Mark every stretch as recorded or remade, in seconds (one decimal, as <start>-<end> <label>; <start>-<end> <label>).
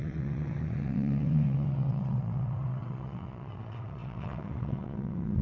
0.0-5.4 remade